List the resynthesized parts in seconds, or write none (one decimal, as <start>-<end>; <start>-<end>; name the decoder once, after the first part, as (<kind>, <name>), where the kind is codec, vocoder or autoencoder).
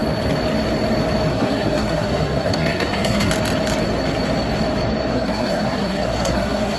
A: 1.3-3.3 (codec, SNAC); 5.1-6.8